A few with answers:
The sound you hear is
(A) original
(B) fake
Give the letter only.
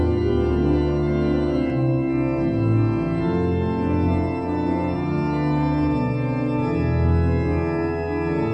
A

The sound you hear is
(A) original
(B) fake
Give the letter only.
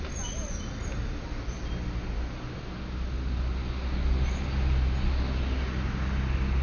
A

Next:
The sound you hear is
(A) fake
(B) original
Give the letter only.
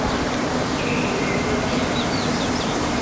B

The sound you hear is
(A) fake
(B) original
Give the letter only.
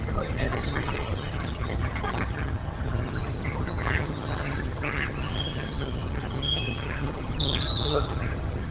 A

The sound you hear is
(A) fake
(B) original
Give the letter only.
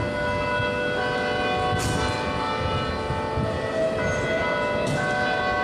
B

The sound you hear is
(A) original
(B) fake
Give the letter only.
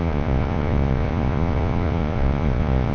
B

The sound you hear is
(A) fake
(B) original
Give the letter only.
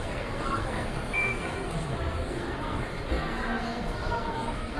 A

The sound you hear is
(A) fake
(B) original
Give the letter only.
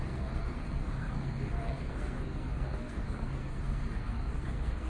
A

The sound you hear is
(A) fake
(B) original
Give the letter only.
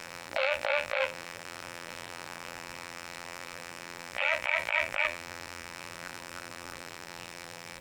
A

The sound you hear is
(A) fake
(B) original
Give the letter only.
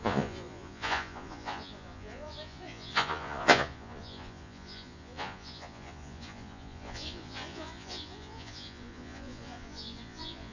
A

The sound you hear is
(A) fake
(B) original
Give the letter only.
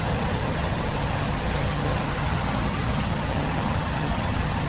A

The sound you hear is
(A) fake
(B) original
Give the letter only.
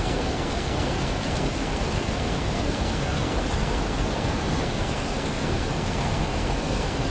A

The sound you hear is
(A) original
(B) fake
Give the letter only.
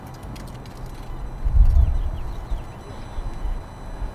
A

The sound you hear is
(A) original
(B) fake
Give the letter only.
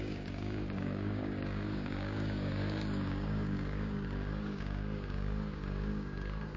B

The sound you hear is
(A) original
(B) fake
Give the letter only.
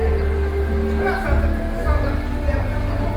A